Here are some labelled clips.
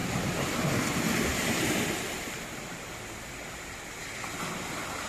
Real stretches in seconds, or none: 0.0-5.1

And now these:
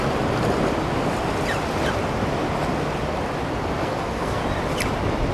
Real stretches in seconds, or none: 0.0-3.8; 4.4-5.3

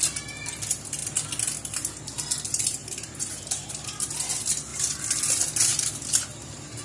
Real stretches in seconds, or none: 0.0-2.8; 4.0-4.7; 5.2-5.7